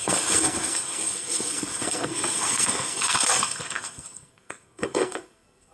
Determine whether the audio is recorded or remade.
remade